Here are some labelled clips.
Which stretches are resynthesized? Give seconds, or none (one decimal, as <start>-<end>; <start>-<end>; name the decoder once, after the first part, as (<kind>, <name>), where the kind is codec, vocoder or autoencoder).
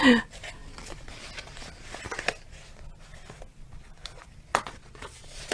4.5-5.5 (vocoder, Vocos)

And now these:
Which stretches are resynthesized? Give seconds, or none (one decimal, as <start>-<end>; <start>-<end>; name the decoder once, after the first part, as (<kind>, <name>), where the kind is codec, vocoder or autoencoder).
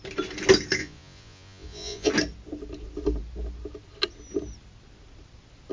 0.8-2.1 (vocoder, Vocos)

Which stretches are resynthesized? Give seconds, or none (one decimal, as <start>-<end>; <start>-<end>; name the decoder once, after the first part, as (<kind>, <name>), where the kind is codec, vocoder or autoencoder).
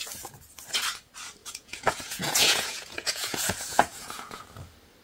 1.4-4.4 (vocoder, Vocos)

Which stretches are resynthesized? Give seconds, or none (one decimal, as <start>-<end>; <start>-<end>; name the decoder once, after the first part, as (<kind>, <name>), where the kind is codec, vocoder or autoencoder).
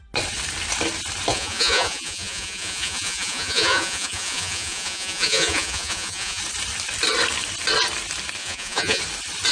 1.3-6.4 (vocoder, Vocos); 8.4-9.0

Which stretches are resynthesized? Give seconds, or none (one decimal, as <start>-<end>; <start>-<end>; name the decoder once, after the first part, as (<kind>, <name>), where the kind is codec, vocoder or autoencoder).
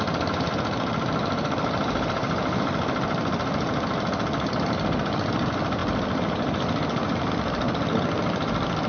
none